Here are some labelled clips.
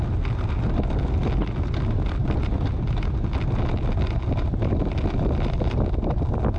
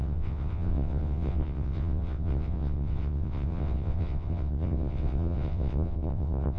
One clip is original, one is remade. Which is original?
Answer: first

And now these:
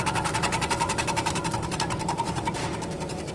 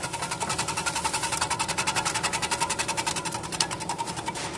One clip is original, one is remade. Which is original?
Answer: second